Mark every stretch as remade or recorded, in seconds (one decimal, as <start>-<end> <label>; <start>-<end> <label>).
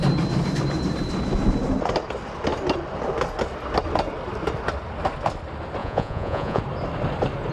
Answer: 0.0-5.8 recorded; 5.8-6.6 remade; 6.6-7.5 recorded